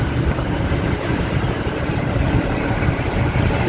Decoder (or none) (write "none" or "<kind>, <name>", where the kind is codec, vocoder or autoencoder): vocoder, BigVGAN v2